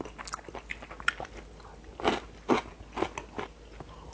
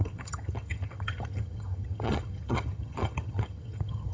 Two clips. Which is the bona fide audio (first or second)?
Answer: first